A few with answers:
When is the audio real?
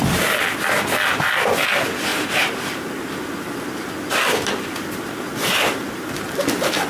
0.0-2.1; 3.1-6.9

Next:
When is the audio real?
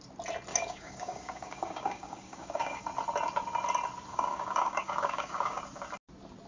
0.0-0.5; 2.8-4.1; 5.6-6.5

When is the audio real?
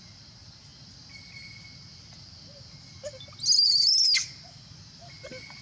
0.0-5.6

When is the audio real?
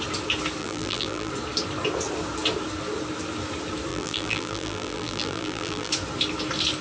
0.0-0.6; 1.3-3.9; 5.9-6.8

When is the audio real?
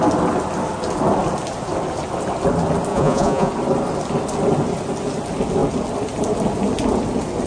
0.0-2.9; 3.5-7.5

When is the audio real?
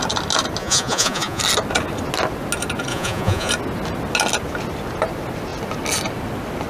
0.0-0.6; 1.4-2.9; 3.5-6.7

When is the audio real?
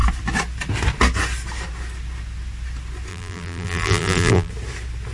0.0-3.1; 4.5-5.1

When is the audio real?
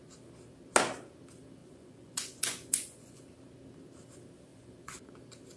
0.0-1.6; 3.2-4.5; 5.1-5.6